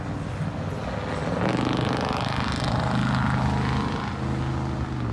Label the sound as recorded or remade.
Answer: recorded